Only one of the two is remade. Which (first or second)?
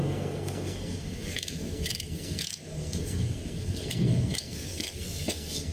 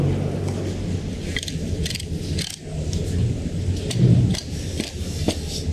first